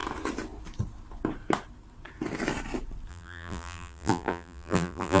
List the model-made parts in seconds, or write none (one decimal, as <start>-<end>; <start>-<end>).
3.1-5.2